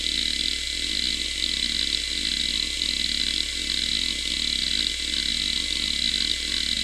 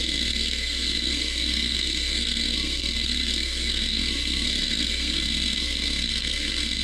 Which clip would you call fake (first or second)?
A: second